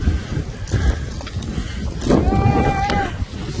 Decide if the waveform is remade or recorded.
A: recorded